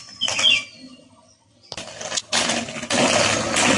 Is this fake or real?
real